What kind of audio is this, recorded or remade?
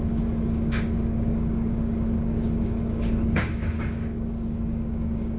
remade